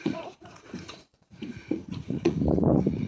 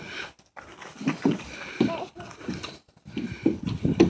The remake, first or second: first